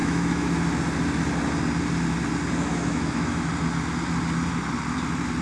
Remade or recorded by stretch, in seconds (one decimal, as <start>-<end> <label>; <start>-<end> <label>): 0.0-0.6 remade; 0.6-2.7 recorded; 2.7-3.5 remade; 3.5-5.4 recorded